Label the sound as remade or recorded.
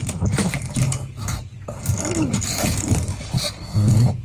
remade